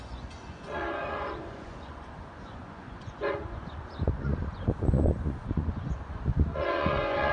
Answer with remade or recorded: remade